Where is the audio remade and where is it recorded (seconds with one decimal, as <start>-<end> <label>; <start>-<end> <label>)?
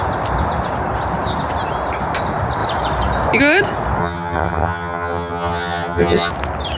0.0-4.0 recorded; 4.0-6.3 remade; 6.3-6.8 recorded